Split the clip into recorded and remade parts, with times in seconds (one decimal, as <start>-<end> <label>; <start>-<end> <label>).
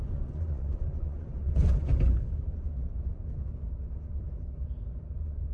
0.0-1.9 remade; 1.9-5.1 recorded; 5.1-5.5 remade